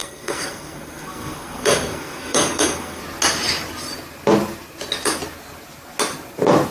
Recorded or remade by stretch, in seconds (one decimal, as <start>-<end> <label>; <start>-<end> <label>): 0.0-3.0 remade; 3.0-6.7 recorded